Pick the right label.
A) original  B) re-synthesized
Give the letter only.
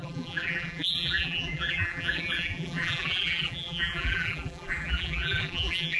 B